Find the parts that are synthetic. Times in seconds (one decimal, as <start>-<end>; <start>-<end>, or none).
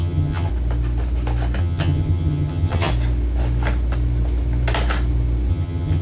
0.0-0.5; 1.6-2.9; 5.5-6.0